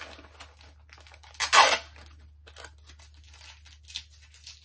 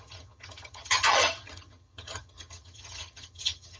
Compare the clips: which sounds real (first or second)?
first